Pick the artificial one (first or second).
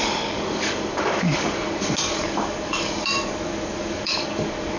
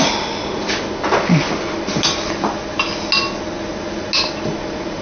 first